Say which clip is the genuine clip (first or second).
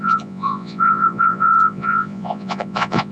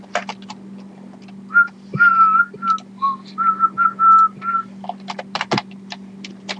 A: second